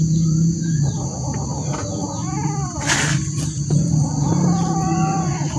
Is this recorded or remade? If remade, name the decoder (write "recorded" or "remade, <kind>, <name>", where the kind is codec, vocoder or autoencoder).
recorded